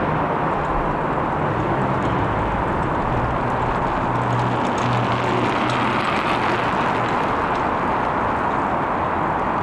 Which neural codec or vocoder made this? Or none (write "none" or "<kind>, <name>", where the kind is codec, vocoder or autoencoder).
none